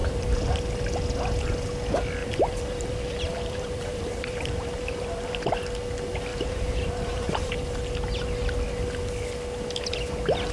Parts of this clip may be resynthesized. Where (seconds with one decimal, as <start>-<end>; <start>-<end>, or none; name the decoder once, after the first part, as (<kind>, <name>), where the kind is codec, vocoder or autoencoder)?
0.0-0.5 (vocoder, BigVGAN v2); 2.2-5.3; 6.3-7.6